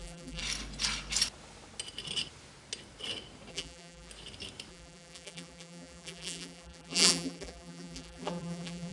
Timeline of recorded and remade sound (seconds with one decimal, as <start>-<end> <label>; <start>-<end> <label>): 0.0-0.4 remade; 0.4-3.5 recorded; 3.5-4.1 remade; 4.1-4.7 recorded; 4.7-8.9 remade